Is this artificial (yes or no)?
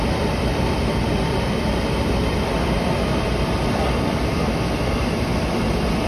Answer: no